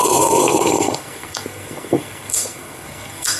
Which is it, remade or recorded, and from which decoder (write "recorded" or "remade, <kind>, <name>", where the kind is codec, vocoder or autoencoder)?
remade, codec, SNAC